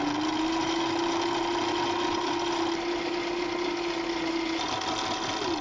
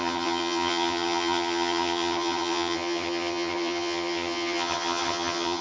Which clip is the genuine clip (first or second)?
first